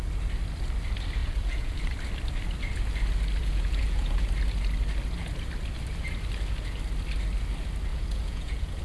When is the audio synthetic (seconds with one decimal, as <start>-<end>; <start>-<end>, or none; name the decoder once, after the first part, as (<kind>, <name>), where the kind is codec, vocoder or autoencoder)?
1.2-1.8 (vocoder, Vocos); 3.4-4.3; 7.9-8.8

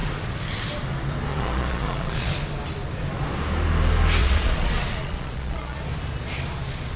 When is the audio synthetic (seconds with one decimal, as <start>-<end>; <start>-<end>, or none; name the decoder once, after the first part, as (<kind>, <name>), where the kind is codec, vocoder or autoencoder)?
1.3-2.3 (vocoder, Vocos); 4.2-5.8

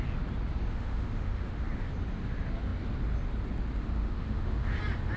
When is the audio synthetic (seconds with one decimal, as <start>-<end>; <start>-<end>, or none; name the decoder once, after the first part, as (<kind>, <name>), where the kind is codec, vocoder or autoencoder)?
0.7-1.9 (autoencoder, DAC-VAE); 3.8-4.8

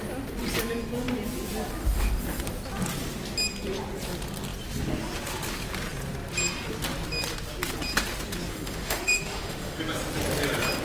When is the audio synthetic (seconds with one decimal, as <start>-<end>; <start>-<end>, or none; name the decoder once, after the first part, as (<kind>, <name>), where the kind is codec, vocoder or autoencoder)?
1.8-2.4 (autoencoder, DAC-VAE); 8.5-9.8

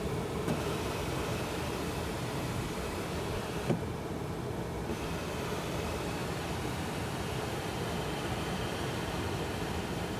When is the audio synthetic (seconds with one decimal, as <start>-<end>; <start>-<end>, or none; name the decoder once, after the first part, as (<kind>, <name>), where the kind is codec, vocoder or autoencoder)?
0.0-1.3 (vocoder, BigVGAN v2); 3.1-6.2; 7.5-10.2

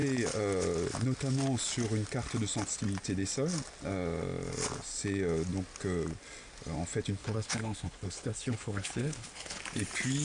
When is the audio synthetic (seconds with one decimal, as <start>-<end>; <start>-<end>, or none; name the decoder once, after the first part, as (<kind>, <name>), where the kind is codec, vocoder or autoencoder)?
7.2-9.6 (codec, HILCodec)

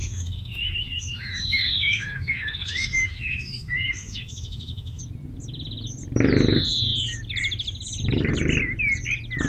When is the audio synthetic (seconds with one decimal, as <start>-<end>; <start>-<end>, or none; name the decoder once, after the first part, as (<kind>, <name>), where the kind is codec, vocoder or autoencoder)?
0.0-5.0 (autoencoder, DAC-VAE)

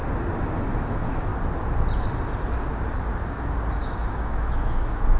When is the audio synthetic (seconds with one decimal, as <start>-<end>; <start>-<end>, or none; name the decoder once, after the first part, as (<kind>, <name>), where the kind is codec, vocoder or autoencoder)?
0.9-1.3 (autoencoder, DAC-VAE); 3.7-5.2